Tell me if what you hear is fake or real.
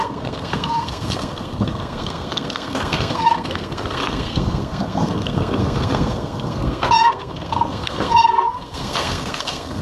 fake